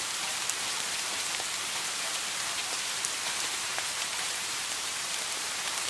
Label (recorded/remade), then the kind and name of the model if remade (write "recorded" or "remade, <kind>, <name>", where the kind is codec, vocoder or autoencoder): remade, vocoder, BigVGAN v2